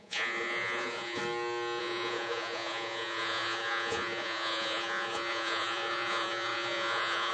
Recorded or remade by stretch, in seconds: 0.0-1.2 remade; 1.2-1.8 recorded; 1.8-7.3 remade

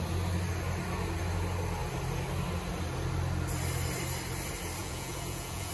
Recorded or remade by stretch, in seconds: 0.0-4.8 recorded; 4.8-5.7 remade

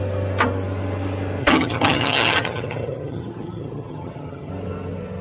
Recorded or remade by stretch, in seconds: 0.0-1.4 recorded; 1.4-4.5 remade; 4.5-5.2 recorded